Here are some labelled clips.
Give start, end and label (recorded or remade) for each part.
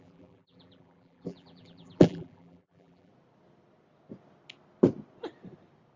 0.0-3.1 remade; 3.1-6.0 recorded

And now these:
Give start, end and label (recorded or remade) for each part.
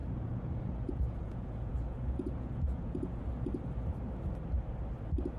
0.0-3.2 remade; 3.2-5.4 recorded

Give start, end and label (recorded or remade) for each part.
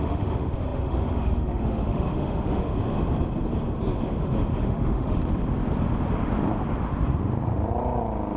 0.0-2.8 remade; 2.8-4.2 recorded; 4.2-5.2 remade; 5.2-8.4 recorded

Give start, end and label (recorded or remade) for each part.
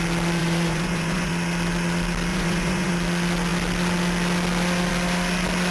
0.0-0.4 recorded; 0.4-1.3 remade; 1.3-2.3 recorded; 2.3-2.9 remade; 2.9-5.7 recorded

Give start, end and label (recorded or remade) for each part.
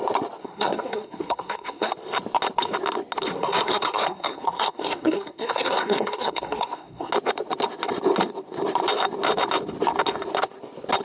0.0-0.4 recorded; 0.4-1.9 remade; 1.9-3.3 recorded; 3.3-7.1 remade; 7.1-11.0 recorded